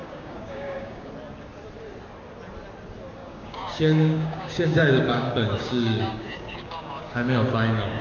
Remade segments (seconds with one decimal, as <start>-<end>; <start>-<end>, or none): 0.0-1.1; 3.2-8.0